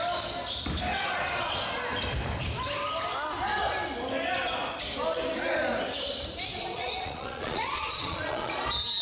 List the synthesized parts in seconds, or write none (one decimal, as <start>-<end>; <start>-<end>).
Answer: 6.6-8.5